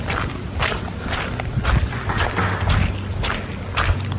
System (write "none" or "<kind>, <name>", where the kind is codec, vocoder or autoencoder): none